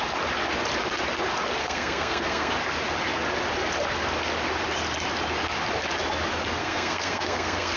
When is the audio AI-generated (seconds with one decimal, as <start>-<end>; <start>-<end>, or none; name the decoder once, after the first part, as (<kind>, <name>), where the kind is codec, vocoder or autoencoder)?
1.6-2.5 (codec, SNAC); 6.6-7.8